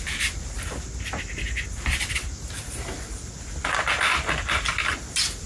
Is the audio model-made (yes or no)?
no